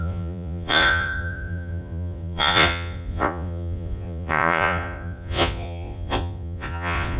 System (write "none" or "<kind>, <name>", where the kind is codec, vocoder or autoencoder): vocoder, Vocos